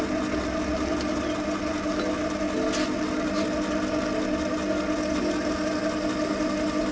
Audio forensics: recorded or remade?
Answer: recorded